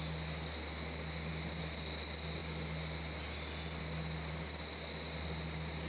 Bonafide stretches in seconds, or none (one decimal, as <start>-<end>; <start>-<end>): 0.0-5.9